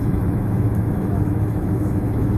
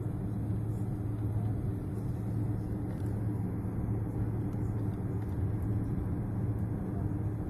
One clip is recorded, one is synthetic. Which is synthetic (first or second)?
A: first